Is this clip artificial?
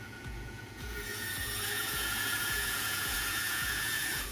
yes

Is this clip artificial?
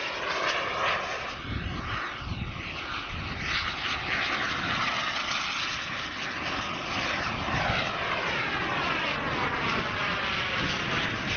no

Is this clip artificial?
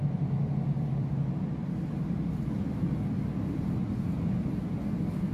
no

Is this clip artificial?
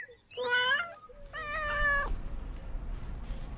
no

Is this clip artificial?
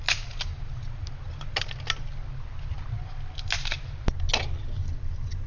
no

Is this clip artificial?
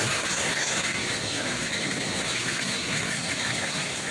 yes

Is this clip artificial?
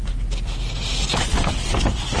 no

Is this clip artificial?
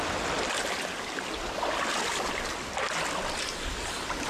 no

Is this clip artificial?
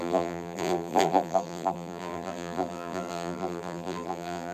yes